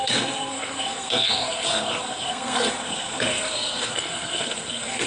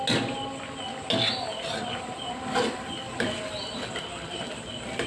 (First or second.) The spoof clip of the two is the first